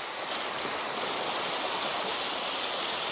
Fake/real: real